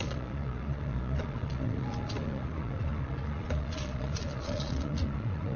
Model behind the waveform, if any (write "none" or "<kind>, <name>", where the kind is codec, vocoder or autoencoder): vocoder, Vocos